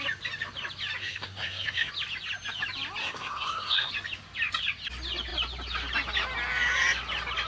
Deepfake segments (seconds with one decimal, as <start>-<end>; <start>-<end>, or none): 1.0-1.9; 3.0-3.9